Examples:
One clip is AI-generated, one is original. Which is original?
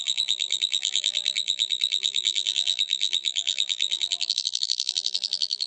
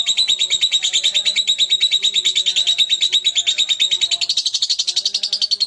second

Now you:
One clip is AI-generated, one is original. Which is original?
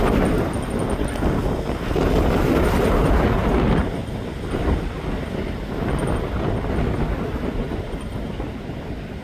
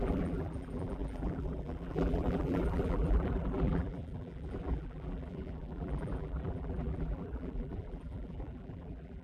first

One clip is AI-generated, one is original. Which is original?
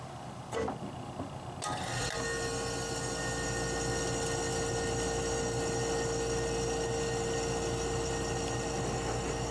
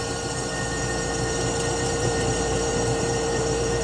first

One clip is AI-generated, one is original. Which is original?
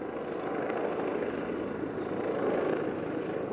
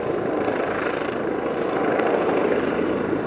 first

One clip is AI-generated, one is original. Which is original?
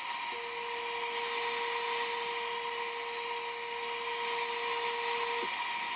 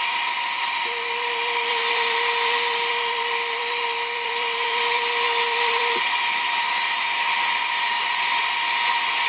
first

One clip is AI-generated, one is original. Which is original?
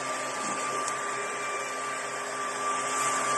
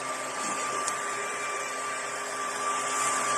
first